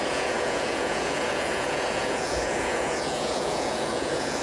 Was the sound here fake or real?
fake